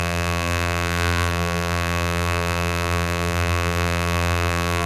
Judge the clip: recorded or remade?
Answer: remade